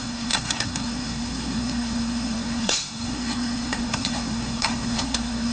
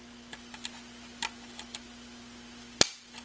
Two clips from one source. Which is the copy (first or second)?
first